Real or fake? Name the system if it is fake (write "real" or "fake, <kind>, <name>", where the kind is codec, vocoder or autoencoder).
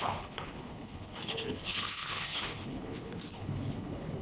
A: fake, codec, HILCodec